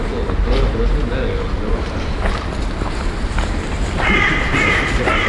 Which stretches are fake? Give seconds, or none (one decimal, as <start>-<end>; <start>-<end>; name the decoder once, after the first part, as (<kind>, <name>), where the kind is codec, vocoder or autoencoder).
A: 1.7-5.3 (vocoder, BigVGAN v2)